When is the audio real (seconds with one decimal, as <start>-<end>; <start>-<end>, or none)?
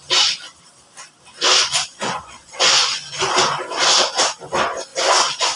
0.0-1.9; 3.4-4.9